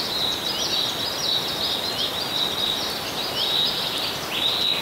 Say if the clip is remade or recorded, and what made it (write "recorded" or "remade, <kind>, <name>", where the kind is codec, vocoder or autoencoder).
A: recorded